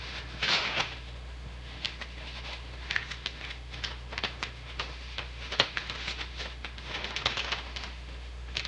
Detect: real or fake fake